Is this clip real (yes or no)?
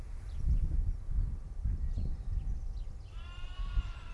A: yes